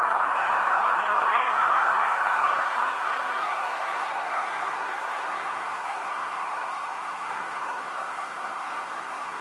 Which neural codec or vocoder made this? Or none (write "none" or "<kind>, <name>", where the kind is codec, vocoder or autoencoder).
codec, SNAC